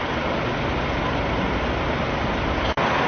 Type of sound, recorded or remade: recorded